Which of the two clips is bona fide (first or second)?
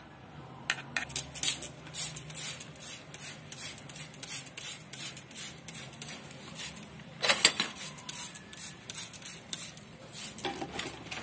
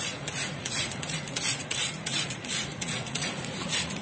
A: first